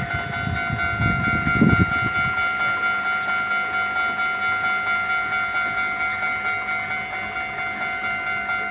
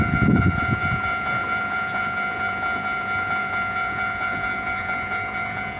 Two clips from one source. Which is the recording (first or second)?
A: first